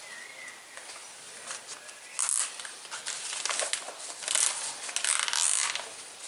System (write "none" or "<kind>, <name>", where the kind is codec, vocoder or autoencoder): none